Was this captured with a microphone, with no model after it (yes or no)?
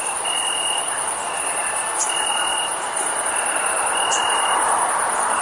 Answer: yes